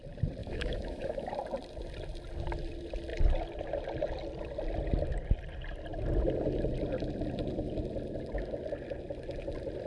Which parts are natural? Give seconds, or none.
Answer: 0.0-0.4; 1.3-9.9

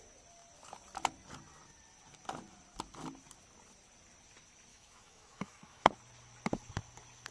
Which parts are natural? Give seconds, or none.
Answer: 0.0-4.7; 5.9-7.3

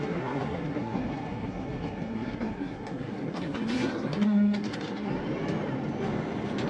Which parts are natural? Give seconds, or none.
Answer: 5.1-6.7